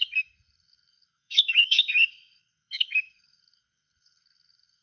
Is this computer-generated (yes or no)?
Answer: yes